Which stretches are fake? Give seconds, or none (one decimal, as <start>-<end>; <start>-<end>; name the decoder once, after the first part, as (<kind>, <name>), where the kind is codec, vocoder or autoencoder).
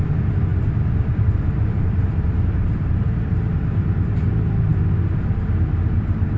0.0-4.7 (vocoder, BigVGAN v2); 5.9-6.4